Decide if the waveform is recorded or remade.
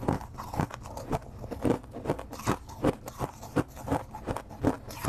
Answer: recorded